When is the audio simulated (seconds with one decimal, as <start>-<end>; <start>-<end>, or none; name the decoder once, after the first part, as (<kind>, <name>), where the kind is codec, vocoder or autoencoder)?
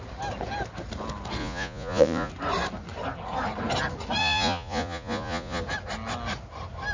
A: 1.4-2.3 (vocoder, Vocos); 4.2-5.6